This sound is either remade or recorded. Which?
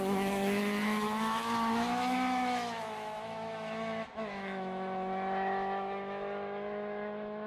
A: remade